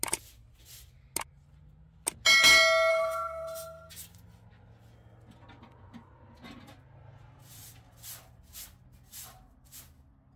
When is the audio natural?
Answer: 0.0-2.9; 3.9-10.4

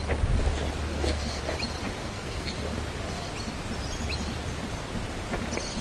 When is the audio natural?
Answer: 0.0-0.9; 1.4-2.0; 2.5-5.8

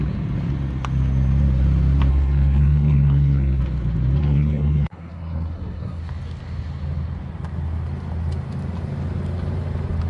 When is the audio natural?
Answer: 0.0-2.1; 3.6-4.2; 6.0-10.1

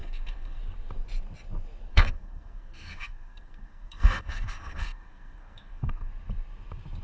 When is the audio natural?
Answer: 0.6-1.9; 6.1-7.0

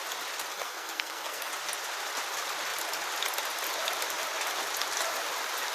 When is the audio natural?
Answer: 0.0-0.5; 1.5-5.7

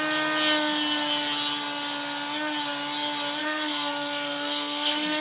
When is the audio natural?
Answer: 0.0-3.4

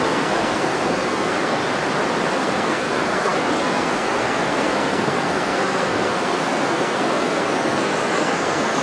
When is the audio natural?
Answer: 1.6-2.3